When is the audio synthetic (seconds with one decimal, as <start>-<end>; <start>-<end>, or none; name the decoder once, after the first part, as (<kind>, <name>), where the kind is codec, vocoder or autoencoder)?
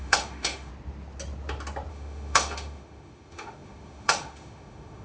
0.0-0.7 (autoencoder, DAC-VAE); 1.9-5.0